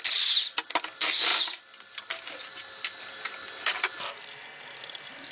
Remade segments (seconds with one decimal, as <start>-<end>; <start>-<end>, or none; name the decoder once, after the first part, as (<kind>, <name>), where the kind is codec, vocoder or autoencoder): none